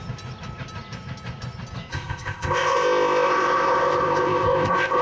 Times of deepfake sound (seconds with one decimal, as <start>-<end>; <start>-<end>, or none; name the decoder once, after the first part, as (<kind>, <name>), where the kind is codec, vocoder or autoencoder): 1.9-5.0 (codec, ZipCodec)